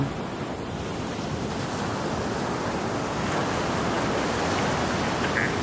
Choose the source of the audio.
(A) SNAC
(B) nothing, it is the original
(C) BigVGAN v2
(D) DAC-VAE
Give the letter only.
B